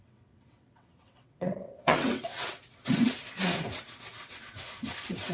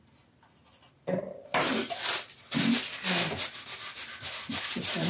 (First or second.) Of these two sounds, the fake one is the first